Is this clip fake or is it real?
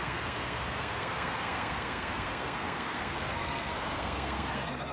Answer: fake